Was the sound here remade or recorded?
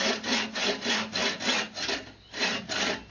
recorded